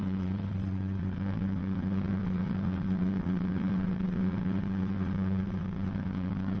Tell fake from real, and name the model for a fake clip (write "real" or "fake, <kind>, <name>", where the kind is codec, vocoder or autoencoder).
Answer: fake, vocoder, WaveNeXt